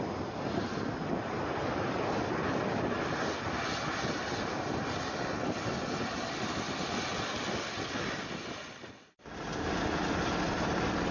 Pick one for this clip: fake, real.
real